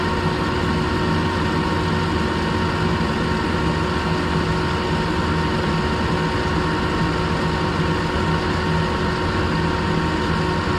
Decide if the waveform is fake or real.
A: real